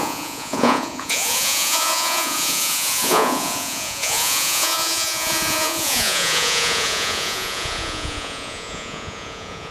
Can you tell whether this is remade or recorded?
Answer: remade